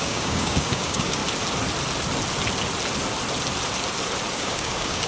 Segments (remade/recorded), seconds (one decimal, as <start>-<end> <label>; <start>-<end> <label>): 0.0-1.2 remade; 1.2-4.3 recorded; 4.3-5.1 remade